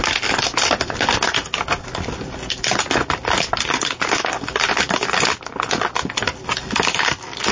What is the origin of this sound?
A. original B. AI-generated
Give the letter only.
A